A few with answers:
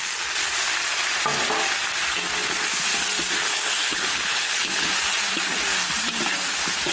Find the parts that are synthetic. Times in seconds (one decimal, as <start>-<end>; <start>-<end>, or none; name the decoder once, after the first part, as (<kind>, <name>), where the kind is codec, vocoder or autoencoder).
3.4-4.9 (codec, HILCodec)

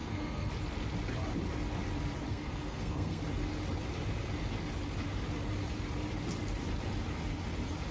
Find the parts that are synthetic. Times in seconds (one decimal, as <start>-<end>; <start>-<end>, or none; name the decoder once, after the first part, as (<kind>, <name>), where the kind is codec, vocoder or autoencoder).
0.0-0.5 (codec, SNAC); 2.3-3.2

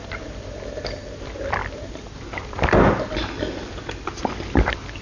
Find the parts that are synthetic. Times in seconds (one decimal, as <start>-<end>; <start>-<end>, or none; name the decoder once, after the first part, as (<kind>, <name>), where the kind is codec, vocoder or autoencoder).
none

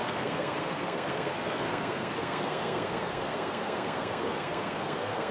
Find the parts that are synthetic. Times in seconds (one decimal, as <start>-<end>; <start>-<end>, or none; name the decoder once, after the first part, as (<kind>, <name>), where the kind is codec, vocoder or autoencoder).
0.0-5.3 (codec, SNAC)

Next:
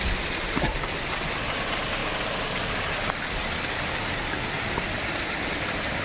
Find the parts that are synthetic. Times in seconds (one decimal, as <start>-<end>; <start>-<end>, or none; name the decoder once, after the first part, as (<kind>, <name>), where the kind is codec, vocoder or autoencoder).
2.0-2.7 (vocoder, BigVGAN v2)